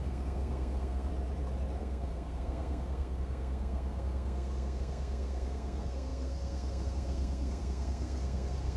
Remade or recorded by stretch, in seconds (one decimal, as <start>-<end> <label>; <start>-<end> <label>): 0.0-1.1 remade; 1.1-1.8 recorded; 1.8-8.8 remade